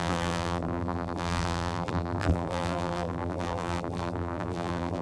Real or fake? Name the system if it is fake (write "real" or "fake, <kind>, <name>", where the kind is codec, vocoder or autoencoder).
fake, vocoder, BigVGAN v2